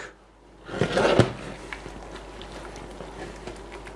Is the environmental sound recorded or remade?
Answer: recorded